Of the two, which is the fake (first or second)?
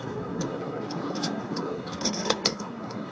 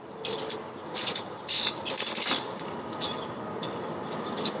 first